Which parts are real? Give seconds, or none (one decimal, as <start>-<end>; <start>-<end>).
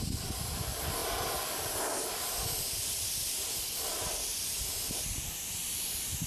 none